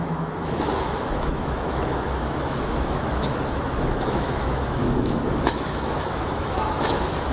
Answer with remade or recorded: remade